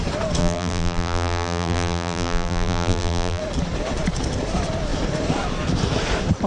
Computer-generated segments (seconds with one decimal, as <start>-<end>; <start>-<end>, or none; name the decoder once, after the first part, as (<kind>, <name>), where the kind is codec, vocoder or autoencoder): 0.4-3.4 (vocoder, BigVGAN v2)